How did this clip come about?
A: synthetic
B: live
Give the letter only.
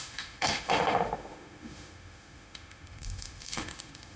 A